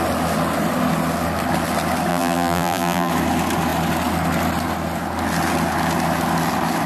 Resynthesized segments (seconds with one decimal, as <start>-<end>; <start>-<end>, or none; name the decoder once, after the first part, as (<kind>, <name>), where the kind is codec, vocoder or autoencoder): 2.1-3.1 (vocoder, BigVGAN v2)